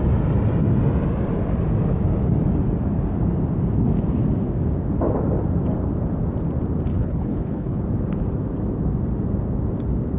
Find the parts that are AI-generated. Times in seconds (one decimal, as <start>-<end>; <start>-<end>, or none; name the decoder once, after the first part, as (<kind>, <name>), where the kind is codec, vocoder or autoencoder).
6.9-7.8 (codec, HILCodec)